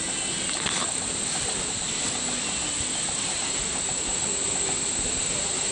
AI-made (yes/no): no